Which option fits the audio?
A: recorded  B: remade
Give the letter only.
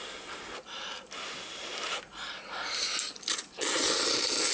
A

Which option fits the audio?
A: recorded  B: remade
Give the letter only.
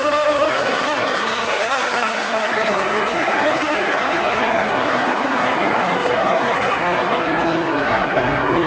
B